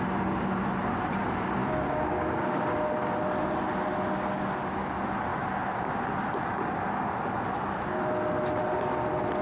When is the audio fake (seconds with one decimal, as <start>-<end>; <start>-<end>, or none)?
1.6-2.9